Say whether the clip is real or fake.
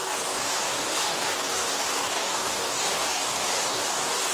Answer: fake